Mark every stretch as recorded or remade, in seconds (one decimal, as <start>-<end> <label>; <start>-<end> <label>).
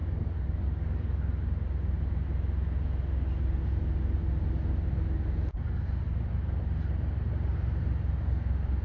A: 0.0-1.2 remade; 1.2-8.8 recorded